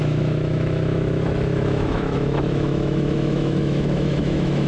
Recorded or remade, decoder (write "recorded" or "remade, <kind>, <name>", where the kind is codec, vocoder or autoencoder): remade, autoencoder, DAC-VAE